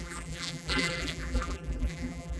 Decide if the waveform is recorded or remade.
remade